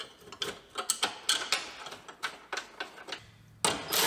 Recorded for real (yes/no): yes